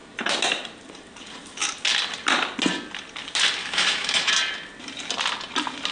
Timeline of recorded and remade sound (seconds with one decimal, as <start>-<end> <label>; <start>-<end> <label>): 0.0-3.6 recorded; 3.6-4.3 remade; 4.3-5.9 recorded